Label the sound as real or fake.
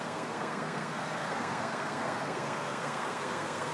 fake